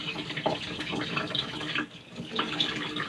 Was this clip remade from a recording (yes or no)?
yes